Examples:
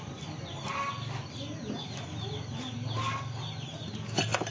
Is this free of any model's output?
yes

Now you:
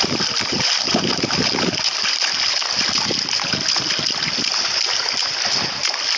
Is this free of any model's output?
yes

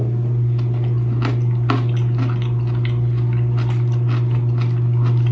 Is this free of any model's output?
yes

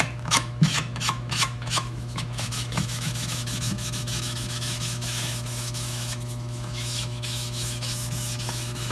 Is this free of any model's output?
no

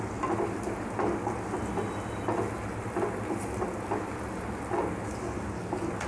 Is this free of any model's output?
yes